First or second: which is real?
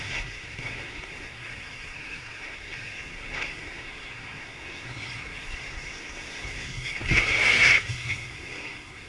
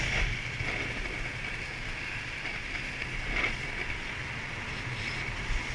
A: second